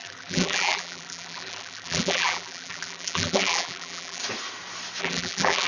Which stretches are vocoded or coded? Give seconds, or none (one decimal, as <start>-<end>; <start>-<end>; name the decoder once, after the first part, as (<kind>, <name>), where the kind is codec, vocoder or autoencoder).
0.0-4.2 (vocoder, BigVGAN v2); 5.0-5.7